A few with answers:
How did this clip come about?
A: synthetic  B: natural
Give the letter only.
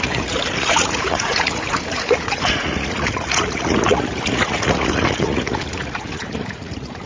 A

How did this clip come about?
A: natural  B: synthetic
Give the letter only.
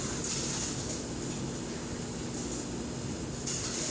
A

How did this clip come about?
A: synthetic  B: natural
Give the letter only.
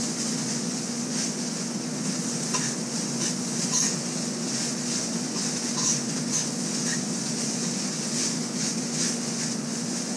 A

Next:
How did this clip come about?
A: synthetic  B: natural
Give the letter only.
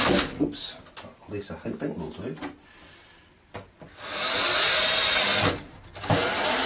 B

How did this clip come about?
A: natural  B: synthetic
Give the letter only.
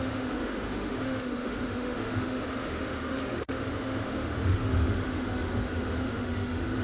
B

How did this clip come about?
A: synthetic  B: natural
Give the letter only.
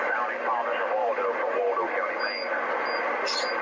B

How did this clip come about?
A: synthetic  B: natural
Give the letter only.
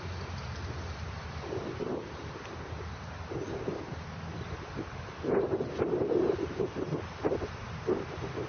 B